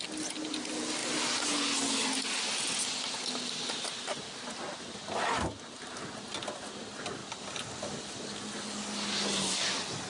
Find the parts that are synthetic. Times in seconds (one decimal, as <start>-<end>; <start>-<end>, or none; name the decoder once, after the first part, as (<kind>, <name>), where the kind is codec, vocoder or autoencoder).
none